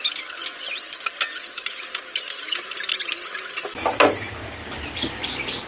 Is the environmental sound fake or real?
real